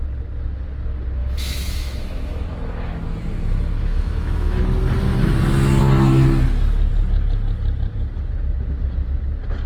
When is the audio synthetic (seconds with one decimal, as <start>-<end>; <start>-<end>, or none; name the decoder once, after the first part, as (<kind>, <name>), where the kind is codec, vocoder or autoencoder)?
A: 1.2-4.6 (autoencoder, DAC-VAE)